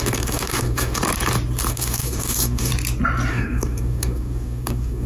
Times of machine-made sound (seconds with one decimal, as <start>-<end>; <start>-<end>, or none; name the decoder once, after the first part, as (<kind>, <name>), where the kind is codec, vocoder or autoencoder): 0.0-1.0 (codec, DAC); 1.7-2.7; 3.3-5.1